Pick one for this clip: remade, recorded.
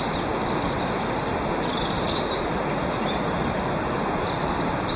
recorded